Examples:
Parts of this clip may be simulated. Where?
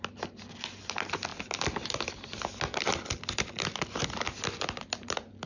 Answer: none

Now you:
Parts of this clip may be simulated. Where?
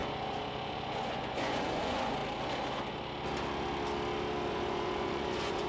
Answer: 0.0-2.2 (vocoder, Vocos); 4.5-5.7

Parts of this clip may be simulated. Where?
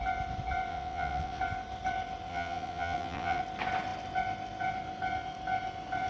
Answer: 0.7-1.4 (vocoder, WaveNeXt); 2.3-3.4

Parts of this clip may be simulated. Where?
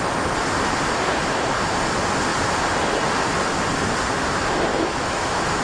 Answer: 4.7-5.6 (autoencoder, DAC-VAE)